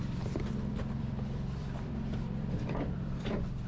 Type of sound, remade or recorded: remade